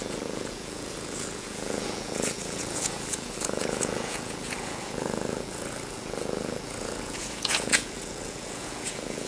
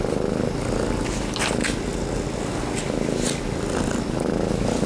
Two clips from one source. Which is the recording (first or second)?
second